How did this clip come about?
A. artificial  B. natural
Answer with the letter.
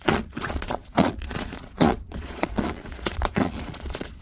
A